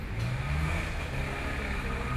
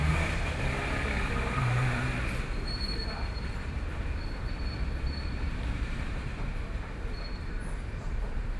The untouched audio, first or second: first